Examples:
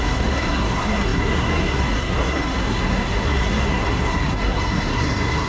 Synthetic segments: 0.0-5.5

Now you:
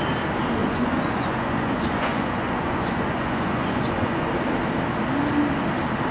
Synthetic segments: 0.6-4.3